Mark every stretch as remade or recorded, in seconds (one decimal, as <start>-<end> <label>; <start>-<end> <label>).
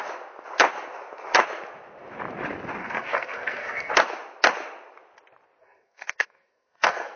0.0-2.8 recorded; 2.8-3.9 remade; 3.9-5.6 recorded; 5.6-7.2 remade